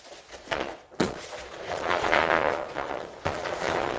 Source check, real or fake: fake